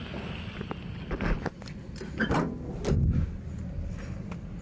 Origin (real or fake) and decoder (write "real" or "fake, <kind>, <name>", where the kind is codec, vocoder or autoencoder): real